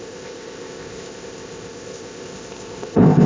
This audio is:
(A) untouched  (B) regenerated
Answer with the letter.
B